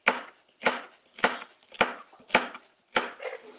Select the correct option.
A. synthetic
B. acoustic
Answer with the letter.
B